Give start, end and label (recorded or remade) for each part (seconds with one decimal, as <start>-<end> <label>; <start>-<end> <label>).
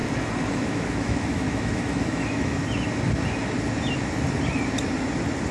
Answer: 0.0-0.5 recorded; 0.5-2.6 remade; 2.6-5.5 recorded